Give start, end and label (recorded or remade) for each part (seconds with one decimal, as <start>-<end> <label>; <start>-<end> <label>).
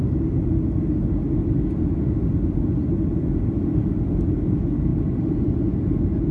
0.0-6.3 recorded